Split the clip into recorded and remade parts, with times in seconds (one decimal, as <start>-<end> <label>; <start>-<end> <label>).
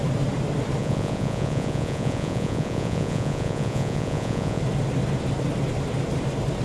0.0-0.8 recorded; 0.8-4.6 remade; 4.6-6.6 recorded